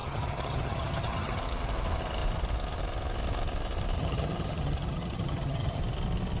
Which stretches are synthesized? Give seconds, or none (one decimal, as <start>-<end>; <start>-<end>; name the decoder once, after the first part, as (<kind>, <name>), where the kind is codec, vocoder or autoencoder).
0.0-1.4 (vocoder, HiFi-GAN); 4.0-5.8